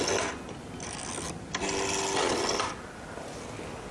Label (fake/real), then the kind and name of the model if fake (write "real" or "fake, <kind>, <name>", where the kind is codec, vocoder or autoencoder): real